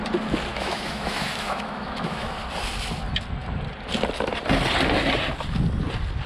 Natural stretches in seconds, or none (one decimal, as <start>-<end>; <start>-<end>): 0.0-0.5; 2.4-6.3